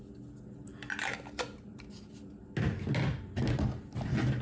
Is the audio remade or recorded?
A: recorded